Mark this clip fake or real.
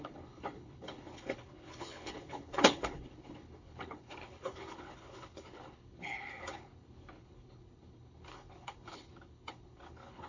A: fake